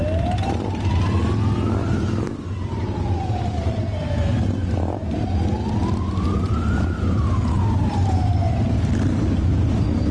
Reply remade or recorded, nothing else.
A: recorded